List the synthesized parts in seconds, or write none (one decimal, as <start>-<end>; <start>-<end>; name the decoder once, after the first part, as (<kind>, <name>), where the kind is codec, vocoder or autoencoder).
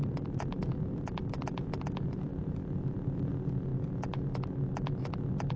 0.0-3.7 (vocoder, BigVGAN v2); 5.0-5.6